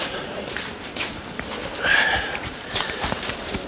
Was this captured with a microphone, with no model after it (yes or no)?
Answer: no